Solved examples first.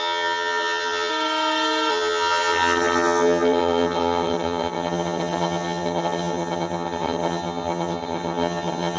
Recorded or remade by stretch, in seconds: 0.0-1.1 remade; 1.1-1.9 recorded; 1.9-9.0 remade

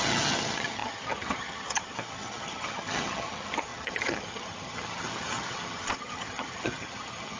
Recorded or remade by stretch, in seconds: 0.0-7.4 remade

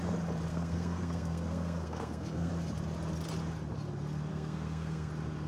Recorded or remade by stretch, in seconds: 0.0-0.5 recorded; 0.5-2.5 remade; 2.5-4.3 recorded; 4.3-5.1 remade; 5.1-5.5 recorded

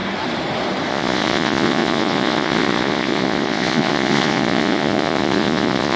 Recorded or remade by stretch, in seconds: 0.0-0.9 recorded; 0.9-6.0 remade

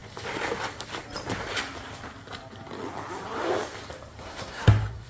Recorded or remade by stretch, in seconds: 0.0-4.2 recorded; 4.2-5.1 remade